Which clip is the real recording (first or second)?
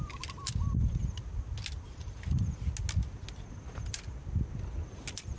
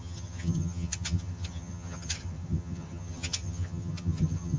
first